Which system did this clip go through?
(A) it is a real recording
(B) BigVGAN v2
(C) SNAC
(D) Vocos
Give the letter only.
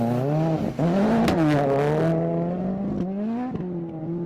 A